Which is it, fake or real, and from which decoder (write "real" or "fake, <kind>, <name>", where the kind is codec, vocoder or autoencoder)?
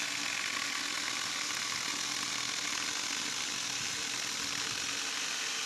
real